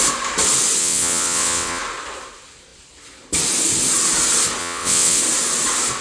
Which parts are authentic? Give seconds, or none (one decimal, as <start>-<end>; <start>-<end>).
0.0-0.8; 1.8-4.6; 5.2-6.0